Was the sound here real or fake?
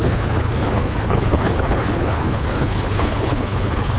fake